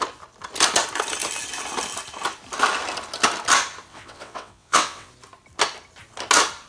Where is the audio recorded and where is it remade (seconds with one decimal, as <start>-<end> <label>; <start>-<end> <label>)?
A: 0.0-3.9 recorded; 3.9-5.1 remade; 5.1-6.7 recorded

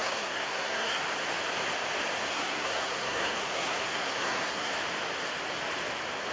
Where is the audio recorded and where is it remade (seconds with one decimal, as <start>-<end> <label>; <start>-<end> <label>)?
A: 0.0-1.0 remade; 1.0-2.3 recorded; 2.3-4.7 remade; 4.7-6.3 recorded